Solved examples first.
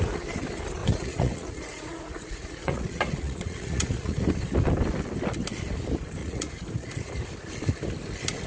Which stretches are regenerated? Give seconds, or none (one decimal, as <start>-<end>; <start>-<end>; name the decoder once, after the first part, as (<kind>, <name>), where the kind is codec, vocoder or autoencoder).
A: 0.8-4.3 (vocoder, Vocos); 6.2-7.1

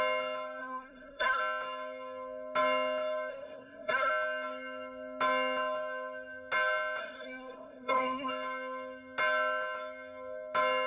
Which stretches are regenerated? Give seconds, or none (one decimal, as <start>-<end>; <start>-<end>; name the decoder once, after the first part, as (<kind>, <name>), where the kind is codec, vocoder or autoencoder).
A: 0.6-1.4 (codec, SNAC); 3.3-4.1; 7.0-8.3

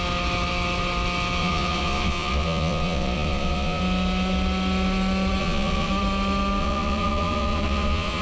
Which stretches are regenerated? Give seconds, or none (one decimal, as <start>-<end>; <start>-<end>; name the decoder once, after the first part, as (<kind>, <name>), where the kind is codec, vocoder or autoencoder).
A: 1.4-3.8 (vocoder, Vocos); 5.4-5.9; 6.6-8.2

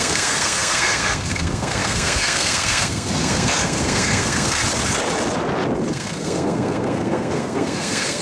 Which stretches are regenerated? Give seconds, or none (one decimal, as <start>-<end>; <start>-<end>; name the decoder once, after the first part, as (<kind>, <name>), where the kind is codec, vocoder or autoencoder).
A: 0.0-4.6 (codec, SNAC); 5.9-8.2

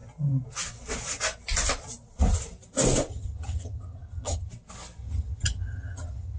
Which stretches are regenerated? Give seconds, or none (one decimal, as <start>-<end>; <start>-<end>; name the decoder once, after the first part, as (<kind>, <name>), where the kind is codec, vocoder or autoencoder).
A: 3.1-4.5 (vocoder, HiFi-GAN); 5.0-6.4

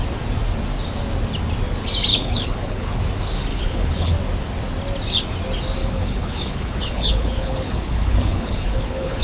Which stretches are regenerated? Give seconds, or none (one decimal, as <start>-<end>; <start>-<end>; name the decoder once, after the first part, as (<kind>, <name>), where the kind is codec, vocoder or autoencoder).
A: 2.1-3.0 (codec, HILCodec); 3.5-4.1; 5.8-9.2